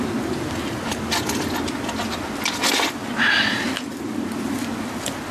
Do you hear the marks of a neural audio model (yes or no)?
no